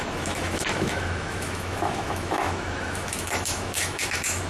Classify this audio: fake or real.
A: fake